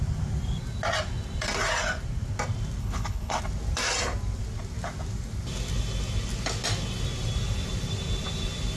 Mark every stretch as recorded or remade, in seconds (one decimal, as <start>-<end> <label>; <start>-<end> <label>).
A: 0.0-2.8 recorded; 2.8-3.4 remade; 3.4-8.8 recorded